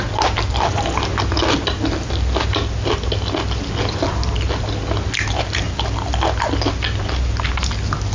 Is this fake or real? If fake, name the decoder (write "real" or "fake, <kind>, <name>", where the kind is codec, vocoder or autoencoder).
real